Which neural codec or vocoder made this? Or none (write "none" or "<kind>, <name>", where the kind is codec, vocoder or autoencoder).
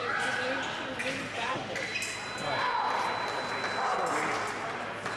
none